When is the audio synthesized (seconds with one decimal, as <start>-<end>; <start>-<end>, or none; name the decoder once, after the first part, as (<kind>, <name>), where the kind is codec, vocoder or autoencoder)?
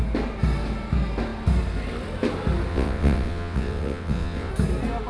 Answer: 2.7-4.5 (vocoder, WaveNeXt)